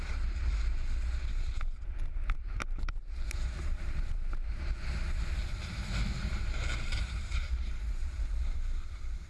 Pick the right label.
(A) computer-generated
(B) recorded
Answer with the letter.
A